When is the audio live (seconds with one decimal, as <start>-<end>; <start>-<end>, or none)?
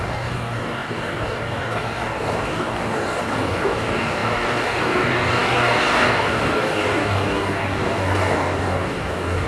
none